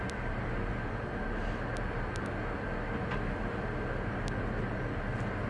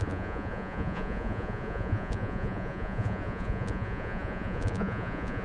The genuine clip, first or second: first